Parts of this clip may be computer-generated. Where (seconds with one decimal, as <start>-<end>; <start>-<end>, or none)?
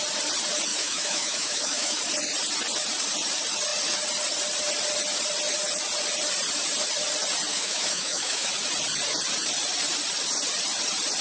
0.7-2.0; 7.5-8.5